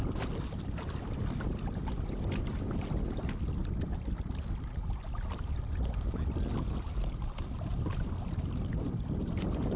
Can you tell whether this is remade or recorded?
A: recorded